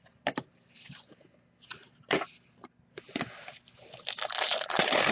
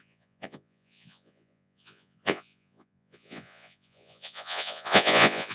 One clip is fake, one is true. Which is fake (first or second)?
second